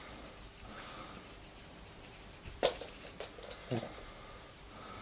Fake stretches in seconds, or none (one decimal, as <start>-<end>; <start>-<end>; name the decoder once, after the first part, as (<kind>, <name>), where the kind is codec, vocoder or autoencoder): none